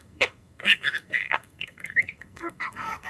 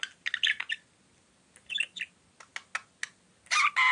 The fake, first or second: first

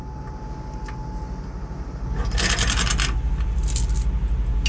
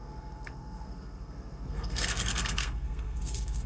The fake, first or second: second